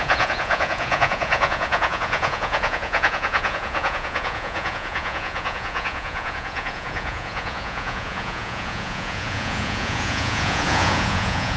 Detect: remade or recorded remade